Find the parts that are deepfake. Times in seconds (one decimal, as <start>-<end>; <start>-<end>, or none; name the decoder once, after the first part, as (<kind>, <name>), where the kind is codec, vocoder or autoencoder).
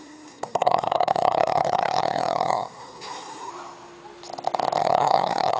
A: 0.0-3.5 (codec, SNAC); 4.8-5.6